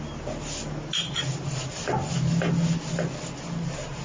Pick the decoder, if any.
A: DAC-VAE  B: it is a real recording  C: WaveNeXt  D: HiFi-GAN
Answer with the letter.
B